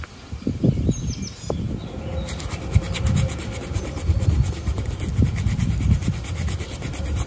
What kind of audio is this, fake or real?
real